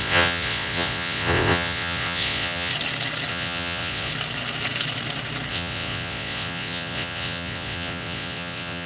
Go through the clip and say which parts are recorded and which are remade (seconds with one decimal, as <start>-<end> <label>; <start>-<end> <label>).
0.0-2.7 remade; 2.7-3.3 recorded; 3.3-4.1 remade; 4.1-5.5 recorded; 5.5-8.9 remade